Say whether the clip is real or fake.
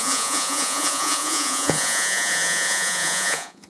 fake